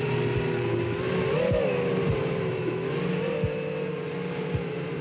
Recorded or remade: recorded